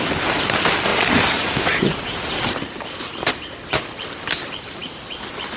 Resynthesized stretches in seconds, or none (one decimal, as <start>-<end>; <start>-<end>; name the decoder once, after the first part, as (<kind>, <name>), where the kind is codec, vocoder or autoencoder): none

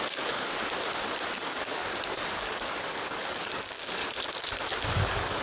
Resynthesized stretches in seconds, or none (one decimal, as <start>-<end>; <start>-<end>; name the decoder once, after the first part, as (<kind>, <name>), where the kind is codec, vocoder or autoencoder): 0.0-0.5 (codec, DAC); 1.4-1.8; 2.4-4.0; 4.8-5.4

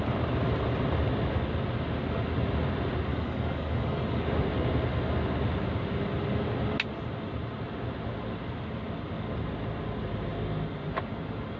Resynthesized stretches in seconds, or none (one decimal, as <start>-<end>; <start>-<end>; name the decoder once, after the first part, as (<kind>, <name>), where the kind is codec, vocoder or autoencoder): 3.1-4.2 (codec, DAC)

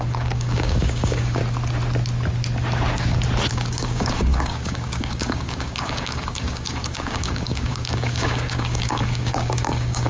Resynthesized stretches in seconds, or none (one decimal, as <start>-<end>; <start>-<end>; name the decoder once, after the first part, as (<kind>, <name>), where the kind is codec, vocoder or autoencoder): 0.0-1.4 (codec, DAC); 3.5-10.1

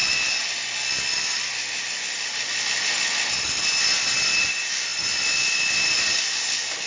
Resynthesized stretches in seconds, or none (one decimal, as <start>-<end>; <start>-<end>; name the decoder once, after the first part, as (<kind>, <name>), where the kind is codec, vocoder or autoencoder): none